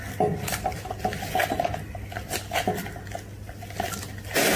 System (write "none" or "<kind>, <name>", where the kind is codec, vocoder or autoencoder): none